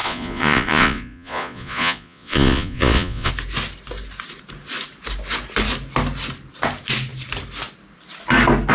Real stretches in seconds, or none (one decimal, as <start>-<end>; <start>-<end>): 3.3-8.7